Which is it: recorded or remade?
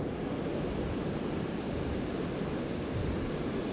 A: recorded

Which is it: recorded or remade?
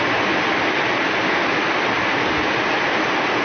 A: recorded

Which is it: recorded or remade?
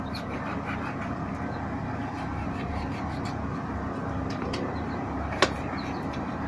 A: remade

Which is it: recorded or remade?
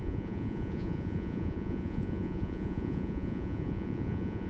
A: remade